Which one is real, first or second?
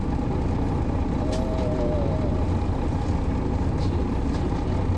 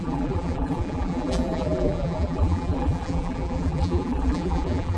first